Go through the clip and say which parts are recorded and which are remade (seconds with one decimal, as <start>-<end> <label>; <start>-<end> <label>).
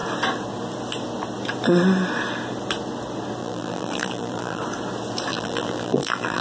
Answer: 0.0-3.4 recorded; 3.4-4.6 remade; 4.6-5.3 recorded; 5.3-6.4 remade